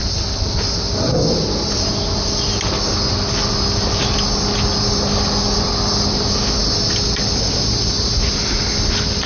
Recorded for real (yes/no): yes